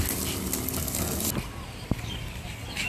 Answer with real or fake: real